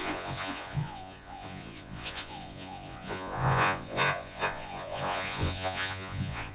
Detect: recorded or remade remade